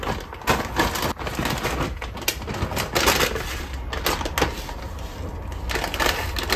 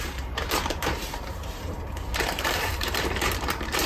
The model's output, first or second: second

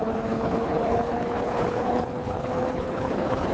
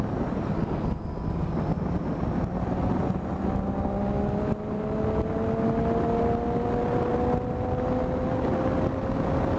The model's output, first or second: first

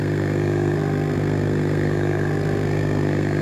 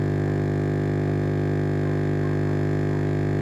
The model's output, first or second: first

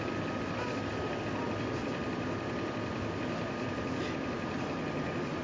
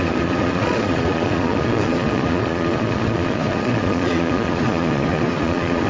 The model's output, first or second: second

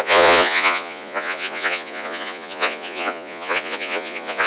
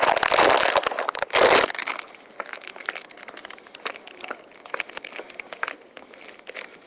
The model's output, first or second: first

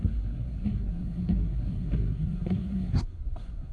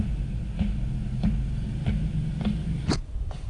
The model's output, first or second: first